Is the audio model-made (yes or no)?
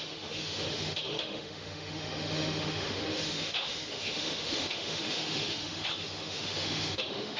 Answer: yes